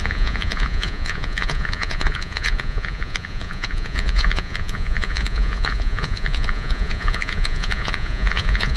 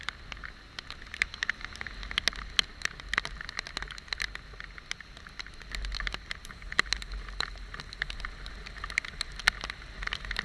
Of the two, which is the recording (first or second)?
second